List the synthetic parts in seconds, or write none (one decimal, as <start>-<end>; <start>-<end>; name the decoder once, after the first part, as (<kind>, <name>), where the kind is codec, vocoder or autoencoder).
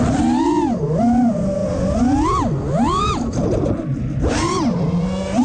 none